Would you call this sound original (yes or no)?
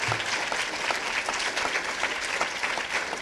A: yes